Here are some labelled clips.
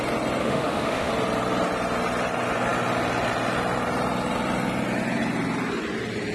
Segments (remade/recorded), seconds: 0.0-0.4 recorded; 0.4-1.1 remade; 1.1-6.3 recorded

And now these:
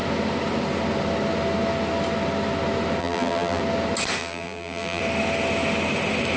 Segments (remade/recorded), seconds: 0.0-3.0 recorded; 3.0-3.6 remade; 3.6-4.2 recorded; 4.2-5.0 remade; 5.0-6.4 recorded

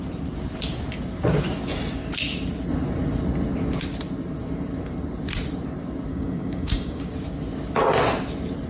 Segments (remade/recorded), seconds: 0.0-6.1 recorded; 6.1-7.1 remade; 7.1-8.7 recorded

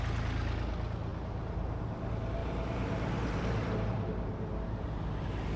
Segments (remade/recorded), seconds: 0.0-1.1 recorded; 1.1-1.8 remade; 1.8-2.4 recorded; 2.4-4.1 remade; 4.1-5.6 recorded

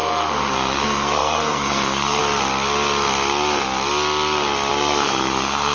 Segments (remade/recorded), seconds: 0.0-2.2 remade; 2.2-4.7 recorded; 4.7-5.7 remade

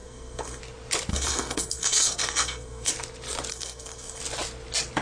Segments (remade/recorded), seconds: 0.0-0.6 remade; 0.6-1.1 recorded; 1.1-2.9 remade; 2.9-3.5 recorded; 3.5-4.2 remade; 4.2-5.0 recorded

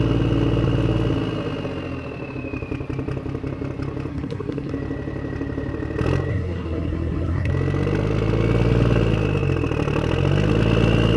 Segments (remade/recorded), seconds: 0.0-4.1 recorded; 4.1-4.7 remade; 4.7-6.3 recorded; 6.3-7.5 remade; 7.5-11.2 recorded

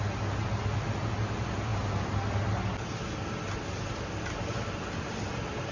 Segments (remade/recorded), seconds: 0.0-5.7 recorded